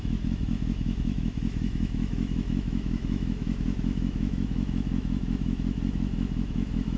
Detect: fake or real fake